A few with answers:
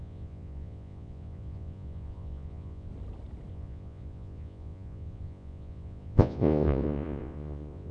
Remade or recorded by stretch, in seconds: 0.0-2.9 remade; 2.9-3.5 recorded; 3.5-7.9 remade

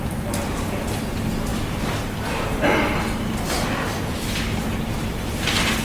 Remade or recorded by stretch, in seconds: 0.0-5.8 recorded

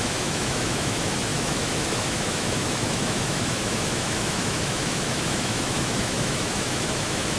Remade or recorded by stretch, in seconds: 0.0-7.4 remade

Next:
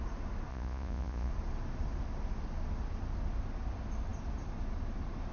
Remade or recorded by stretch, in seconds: 0.0-0.5 recorded; 0.5-1.3 remade; 1.3-5.3 recorded

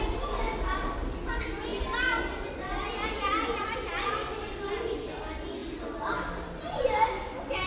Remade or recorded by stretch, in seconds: 0.0-7.7 recorded